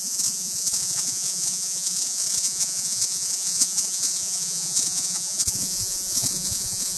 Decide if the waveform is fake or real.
fake